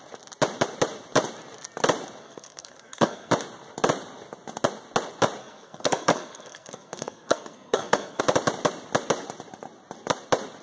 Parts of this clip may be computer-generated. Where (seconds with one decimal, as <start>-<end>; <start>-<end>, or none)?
2.2-3.3; 5.4-8.2